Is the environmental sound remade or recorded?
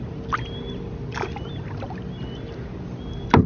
recorded